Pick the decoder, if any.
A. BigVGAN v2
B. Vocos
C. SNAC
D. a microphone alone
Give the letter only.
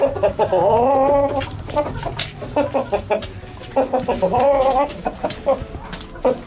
D